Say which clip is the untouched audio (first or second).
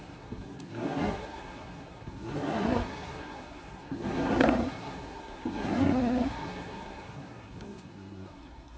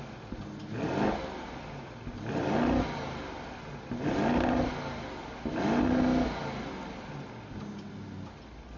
second